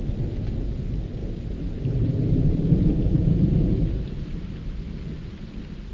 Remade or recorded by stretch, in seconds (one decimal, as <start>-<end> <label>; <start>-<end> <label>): 0.0-1.2 recorded; 1.2-4.7 remade; 4.7-5.9 recorded